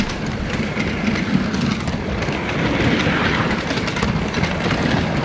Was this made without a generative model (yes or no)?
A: yes